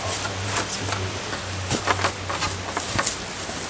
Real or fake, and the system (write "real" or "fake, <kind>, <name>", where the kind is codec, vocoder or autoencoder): real